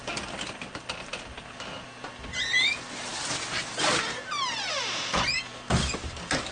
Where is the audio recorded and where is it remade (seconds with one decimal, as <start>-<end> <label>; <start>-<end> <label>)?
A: 0.0-6.5 recorded